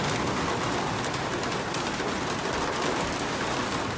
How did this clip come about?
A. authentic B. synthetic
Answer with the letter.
A